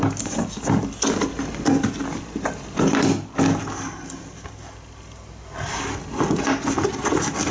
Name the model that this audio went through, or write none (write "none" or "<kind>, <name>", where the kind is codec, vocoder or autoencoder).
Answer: none